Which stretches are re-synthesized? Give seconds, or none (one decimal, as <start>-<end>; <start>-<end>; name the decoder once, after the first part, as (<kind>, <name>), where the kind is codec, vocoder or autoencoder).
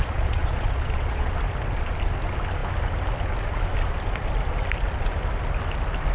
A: 0.0-1.3 (vocoder, Vocos)